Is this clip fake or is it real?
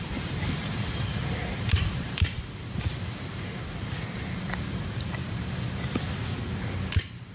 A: fake